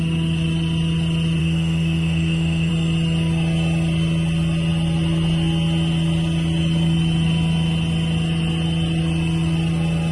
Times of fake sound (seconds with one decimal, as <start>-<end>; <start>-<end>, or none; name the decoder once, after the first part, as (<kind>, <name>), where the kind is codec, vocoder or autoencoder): 1.4-2.7 (autoencoder, DAC-VAE)